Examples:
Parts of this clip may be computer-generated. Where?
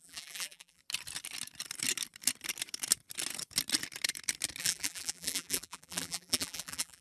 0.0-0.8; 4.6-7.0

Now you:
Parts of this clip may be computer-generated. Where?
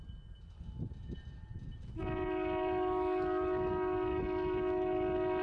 none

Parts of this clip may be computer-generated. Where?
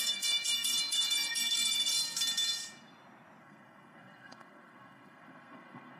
0.0-1.9; 3.4-6.0